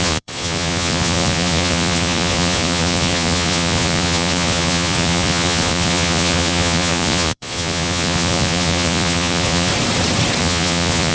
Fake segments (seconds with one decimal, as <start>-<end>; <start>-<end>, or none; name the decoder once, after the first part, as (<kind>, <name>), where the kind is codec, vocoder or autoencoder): 0.0-9.7 (vocoder, Vocos); 10.4-11.1